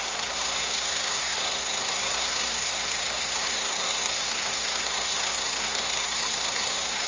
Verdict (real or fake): fake